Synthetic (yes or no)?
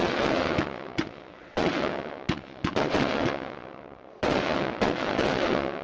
yes